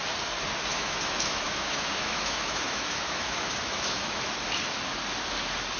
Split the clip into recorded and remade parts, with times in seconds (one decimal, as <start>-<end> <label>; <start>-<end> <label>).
0.0-0.7 recorded; 0.7-4.2 remade; 4.2-5.8 recorded